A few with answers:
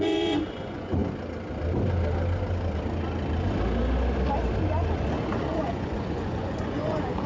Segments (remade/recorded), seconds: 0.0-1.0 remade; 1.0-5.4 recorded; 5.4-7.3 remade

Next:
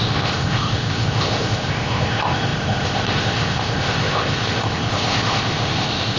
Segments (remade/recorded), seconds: 0.0-6.2 remade